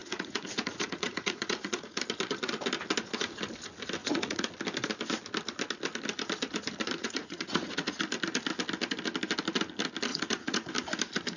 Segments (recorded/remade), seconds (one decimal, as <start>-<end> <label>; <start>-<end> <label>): 0.0-2.0 remade; 2.0-4.0 recorded; 4.0-4.5 remade; 4.5-7.0 recorded; 7.0-8.0 remade; 8.0-10.1 recorded; 10.1-10.7 remade; 10.7-11.4 recorded